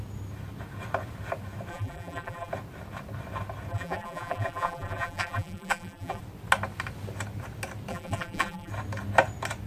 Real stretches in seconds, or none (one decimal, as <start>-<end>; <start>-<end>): 0.0-1.7; 2.5-3.7; 6.2-7.9; 8.7-9.7

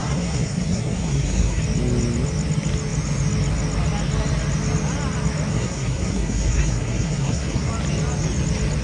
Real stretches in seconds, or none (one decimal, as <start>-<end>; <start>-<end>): 1.6-5.5; 7.7-8.8